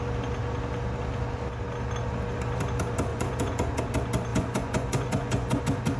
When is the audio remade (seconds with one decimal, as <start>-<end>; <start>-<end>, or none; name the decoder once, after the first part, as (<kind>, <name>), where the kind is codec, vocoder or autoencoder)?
3.1-3.8 (vocoder, Vocos); 4.3-5.6